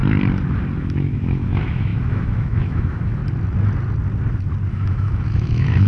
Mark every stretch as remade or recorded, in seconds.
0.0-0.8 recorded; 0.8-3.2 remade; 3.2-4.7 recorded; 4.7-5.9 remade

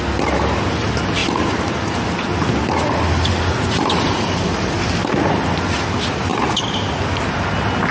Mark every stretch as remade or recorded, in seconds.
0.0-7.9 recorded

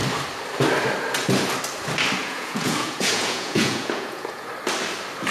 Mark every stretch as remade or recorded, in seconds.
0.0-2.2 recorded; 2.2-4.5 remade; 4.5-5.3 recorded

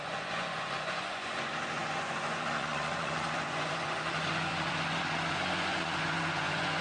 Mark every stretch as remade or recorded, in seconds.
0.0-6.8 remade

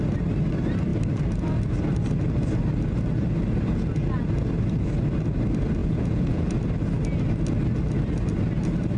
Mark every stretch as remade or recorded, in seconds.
0.0-5.8 recorded; 5.8-6.5 remade; 6.5-9.0 recorded